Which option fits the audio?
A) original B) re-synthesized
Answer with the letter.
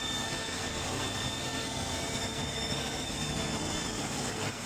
B